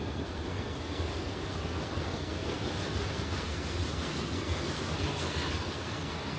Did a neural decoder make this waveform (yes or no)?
yes